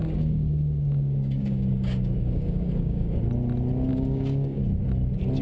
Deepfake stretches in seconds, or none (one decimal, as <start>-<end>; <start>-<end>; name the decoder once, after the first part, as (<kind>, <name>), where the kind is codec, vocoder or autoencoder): 0.0-3.2 (codec, DAC); 3.9-4.6